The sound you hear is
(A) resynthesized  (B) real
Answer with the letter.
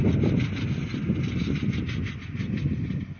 B